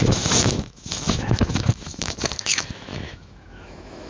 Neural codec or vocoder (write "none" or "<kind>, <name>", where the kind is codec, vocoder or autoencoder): autoencoder, DAC-VAE